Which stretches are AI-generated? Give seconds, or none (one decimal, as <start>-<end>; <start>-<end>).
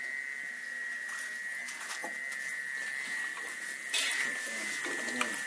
none